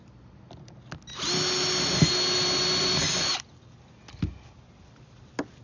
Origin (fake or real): real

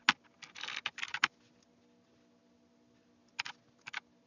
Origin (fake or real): real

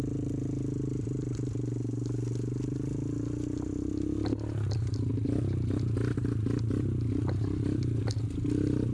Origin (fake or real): real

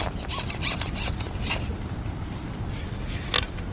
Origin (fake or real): real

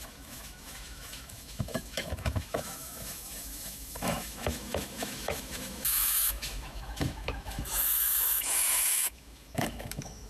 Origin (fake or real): fake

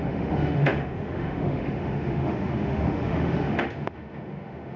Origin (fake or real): fake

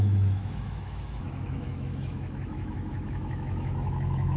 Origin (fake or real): fake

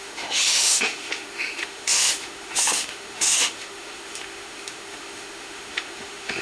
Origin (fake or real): fake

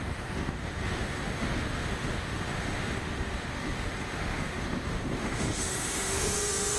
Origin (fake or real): fake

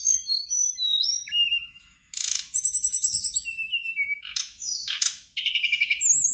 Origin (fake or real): fake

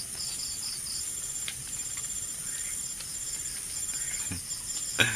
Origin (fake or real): real